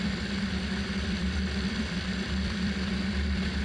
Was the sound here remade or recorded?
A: remade